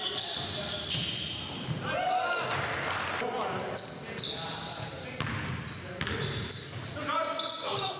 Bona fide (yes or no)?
yes